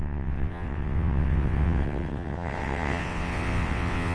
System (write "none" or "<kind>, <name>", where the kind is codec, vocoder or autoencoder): vocoder, WaveNeXt